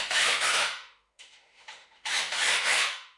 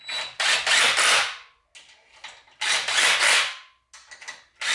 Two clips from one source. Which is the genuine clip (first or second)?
second